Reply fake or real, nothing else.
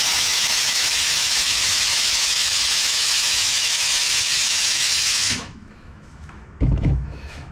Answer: fake